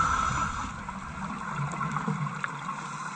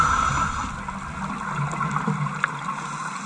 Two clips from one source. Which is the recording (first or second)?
second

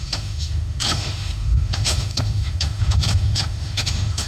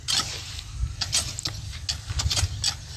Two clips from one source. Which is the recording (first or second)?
second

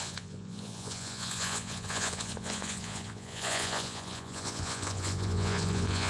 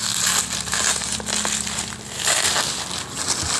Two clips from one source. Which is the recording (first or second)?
second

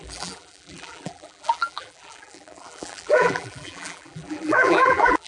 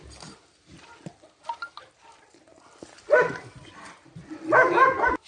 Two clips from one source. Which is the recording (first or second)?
second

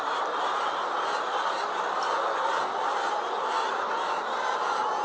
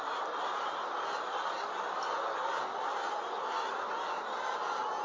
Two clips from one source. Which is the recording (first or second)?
second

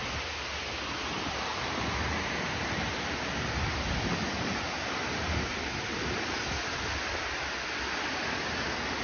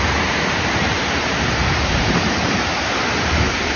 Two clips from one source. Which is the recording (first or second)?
first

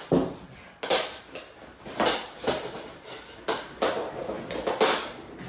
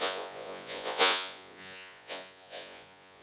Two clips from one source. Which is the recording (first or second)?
first